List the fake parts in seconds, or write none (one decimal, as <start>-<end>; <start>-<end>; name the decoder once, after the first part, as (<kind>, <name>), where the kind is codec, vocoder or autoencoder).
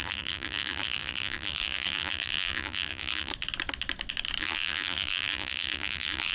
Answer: 0.0-3.3 (vocoder, BigVGAN v2); 4.4-6.3